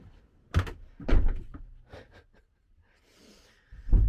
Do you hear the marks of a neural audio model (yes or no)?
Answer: no